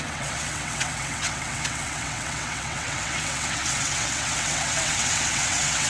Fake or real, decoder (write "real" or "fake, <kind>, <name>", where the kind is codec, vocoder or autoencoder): fake, vocoder, WaveNeXt